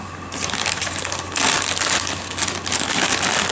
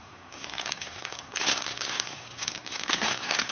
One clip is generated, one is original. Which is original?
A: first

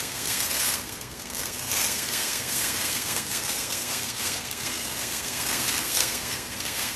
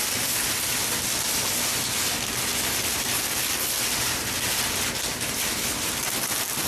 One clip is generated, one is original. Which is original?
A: second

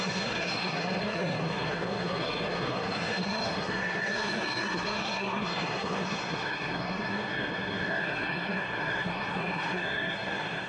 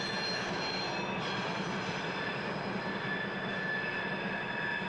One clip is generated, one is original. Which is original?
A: second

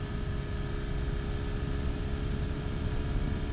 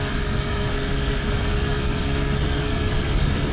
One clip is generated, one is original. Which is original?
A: first